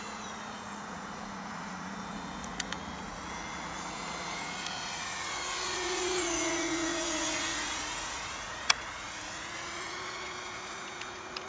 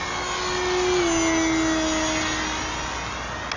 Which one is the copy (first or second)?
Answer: first